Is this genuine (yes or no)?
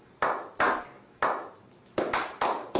yes